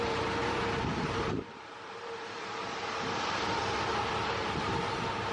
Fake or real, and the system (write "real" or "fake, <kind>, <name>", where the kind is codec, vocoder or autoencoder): fake, vocoder, BigVGAN v2